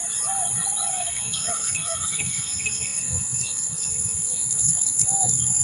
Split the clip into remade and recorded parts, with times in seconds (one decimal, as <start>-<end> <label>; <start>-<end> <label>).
0.0-0.9 recorded; 0.9-5.6 remade